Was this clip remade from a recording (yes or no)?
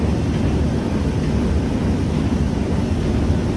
no